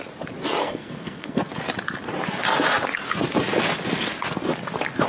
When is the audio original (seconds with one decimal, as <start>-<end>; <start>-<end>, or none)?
0.0-0.6; 1.4-5.1